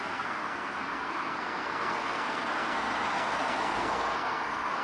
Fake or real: fake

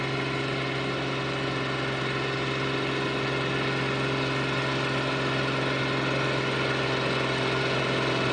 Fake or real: real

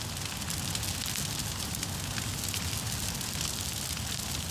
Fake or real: real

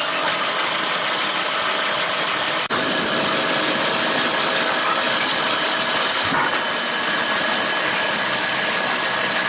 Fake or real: real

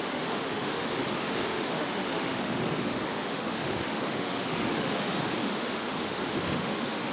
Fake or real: fake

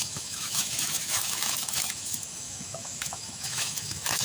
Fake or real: fake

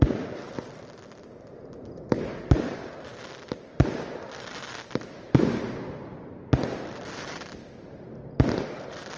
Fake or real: real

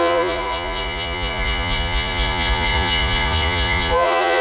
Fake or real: fake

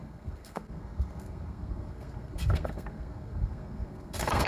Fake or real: fake